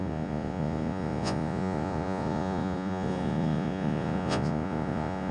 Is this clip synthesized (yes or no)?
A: yes